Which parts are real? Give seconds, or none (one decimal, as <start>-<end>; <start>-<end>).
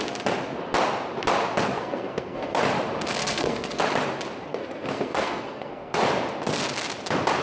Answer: 0.0-1.7; 2.6-3.2; 3.8-4.5; 6.0-7.4